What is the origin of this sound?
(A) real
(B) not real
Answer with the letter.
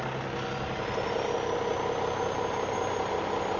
A